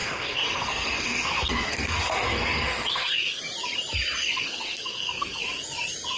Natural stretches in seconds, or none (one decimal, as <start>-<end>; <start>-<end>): 3.4-4.2; 5.5-6.2